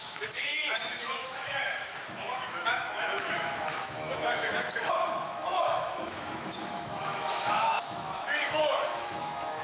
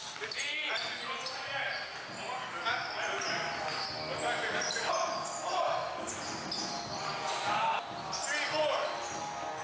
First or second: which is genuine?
second